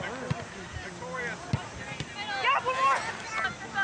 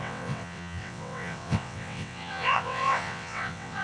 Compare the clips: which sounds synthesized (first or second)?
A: second